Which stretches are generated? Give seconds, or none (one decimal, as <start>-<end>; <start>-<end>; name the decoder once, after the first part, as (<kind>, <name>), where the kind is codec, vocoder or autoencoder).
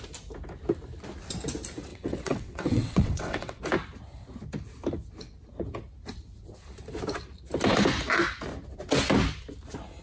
1.9-3.6 (vocoder, WaveNeXt)